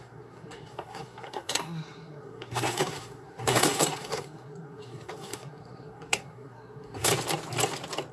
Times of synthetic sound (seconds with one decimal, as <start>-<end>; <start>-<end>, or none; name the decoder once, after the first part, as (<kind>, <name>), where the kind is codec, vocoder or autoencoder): 0.0-7.1 (codec, SNAC)